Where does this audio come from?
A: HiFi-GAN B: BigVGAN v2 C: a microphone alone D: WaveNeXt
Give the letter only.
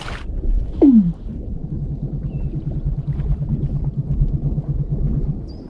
C